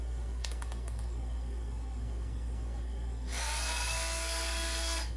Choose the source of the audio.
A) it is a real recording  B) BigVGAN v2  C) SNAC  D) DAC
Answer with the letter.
C